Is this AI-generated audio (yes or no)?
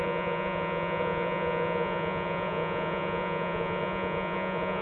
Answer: yes